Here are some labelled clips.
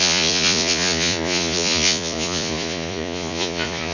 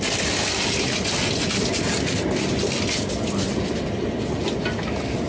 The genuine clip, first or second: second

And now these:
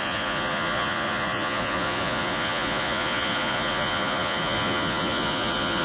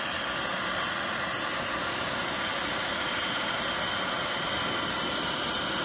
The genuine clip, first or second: second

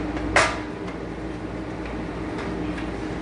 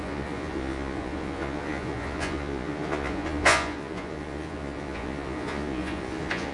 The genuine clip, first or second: first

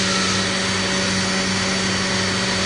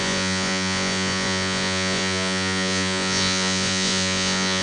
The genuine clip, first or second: first